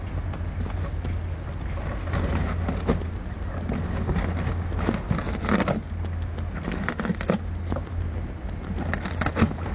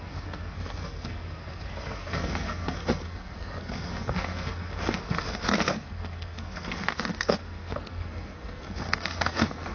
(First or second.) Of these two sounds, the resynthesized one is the second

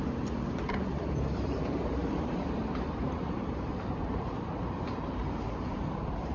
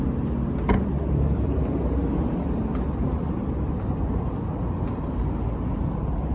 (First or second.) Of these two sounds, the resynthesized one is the first